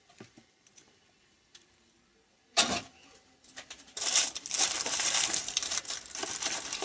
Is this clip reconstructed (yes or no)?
yes